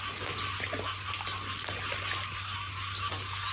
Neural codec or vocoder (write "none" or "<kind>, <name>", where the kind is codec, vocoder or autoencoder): none